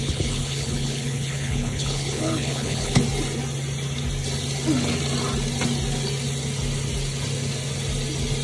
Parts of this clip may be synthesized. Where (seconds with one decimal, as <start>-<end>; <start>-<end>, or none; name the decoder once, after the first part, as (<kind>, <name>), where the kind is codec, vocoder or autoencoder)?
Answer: 0.0-3.0 (codec, HILCodec)